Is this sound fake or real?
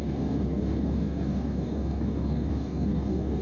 fake